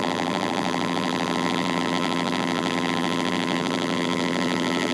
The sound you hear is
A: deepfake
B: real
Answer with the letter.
A